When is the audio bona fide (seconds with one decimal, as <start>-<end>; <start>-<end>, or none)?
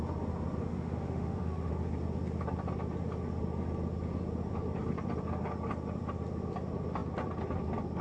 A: 0.0-0.7; 1.7-8.0